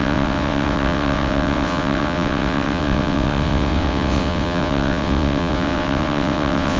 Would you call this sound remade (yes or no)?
yes